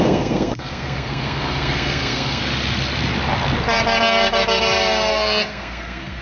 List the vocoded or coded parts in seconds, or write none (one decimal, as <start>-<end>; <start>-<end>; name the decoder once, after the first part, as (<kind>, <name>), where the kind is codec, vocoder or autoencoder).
0.0-2.4 (codec, SNAC); 5.1-6.2